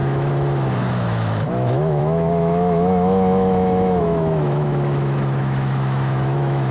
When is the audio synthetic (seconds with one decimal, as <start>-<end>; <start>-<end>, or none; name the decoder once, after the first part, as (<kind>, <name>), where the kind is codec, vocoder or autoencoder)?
0.0-6.7 (autoencoder, DAC-VAE)